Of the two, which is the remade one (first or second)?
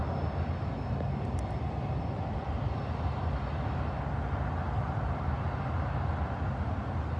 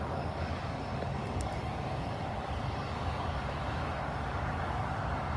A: second